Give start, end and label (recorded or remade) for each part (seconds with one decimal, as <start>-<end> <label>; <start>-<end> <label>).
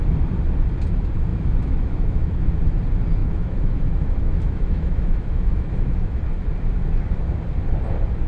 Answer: 0.0-1.3 recorded; 1.3-2.5 remade; 2.5-3.2 recorded; 3.2-6.2 remade; 6.2-8.3 recorded